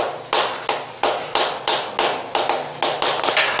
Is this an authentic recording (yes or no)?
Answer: yes